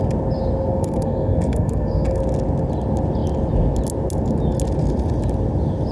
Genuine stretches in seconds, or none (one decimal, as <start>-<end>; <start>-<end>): 0.0-0.7; 2.2-5.9